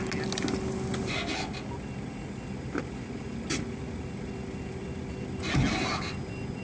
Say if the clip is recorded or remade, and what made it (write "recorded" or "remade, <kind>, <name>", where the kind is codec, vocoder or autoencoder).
recorded